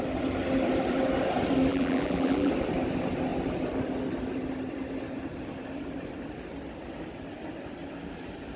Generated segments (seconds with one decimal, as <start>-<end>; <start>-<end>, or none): 1.7-2.5